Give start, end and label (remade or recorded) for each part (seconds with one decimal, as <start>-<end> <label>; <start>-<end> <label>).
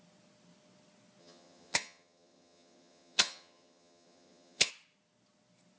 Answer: 0.0-1.2 recorded; 1.2-4.7 remade; 4.7-5.8 recorded